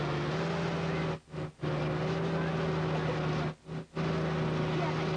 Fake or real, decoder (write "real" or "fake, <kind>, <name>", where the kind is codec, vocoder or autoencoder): real